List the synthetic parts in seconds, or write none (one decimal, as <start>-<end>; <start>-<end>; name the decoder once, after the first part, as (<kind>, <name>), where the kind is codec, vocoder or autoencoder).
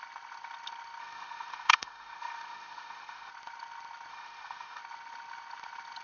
1.0-3.3 (autoencoder, DAC-VAE); 4.1-4.8